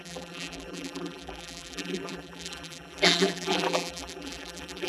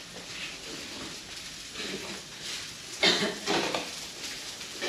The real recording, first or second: second